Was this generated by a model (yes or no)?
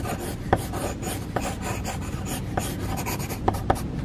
no